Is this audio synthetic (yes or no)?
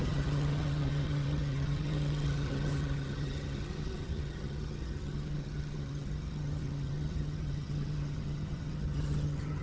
yes